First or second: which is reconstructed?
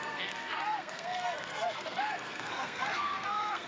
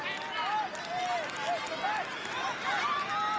first